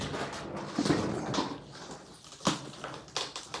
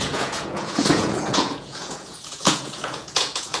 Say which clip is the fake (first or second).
second